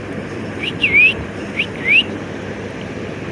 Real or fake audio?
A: real